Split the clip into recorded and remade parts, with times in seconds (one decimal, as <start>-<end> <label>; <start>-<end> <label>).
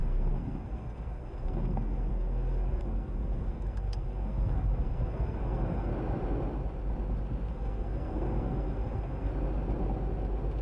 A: 0.0-5.9 remade; 5.9-7.5 recorded; 7.5-9.3 remade; 9.3-10.6 recorded